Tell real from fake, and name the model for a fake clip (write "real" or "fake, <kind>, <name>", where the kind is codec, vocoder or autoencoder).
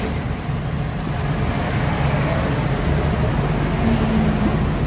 real